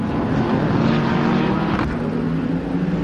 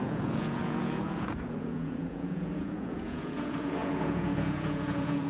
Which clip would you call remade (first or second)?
second